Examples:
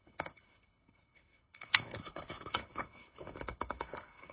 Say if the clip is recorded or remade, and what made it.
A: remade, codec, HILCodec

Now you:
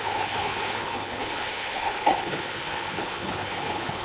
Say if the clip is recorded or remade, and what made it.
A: remade, codec, HILCodec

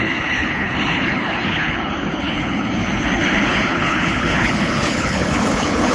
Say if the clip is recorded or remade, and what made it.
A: remade, codec, HILCodec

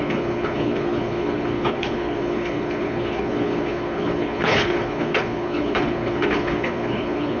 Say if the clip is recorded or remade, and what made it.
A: remade, codec, HILCodec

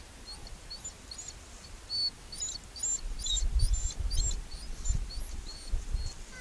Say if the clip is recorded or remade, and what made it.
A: recorded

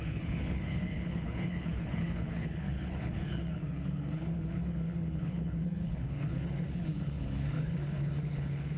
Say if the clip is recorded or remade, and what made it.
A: remade, codec, HILCodec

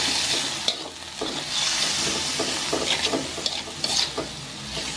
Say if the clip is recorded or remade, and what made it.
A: recorded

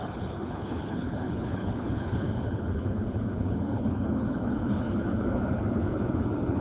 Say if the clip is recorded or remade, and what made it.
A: remade, codec, HILCodec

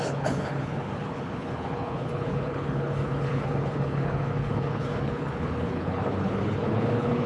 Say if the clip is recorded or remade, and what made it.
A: remade, codec, HILCodec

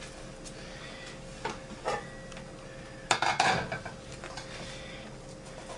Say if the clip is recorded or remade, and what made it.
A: recorded